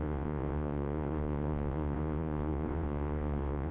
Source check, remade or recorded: remade